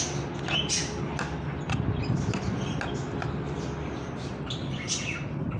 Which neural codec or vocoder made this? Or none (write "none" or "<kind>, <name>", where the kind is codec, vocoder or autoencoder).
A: none